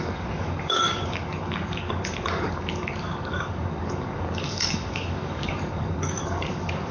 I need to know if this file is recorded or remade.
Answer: remade